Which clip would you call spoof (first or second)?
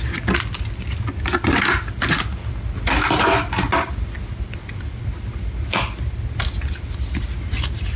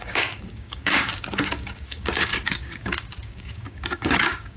second